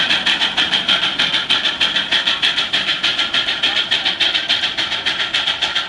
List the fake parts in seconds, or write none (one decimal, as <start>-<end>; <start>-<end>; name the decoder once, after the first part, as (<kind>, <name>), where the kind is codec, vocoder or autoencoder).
none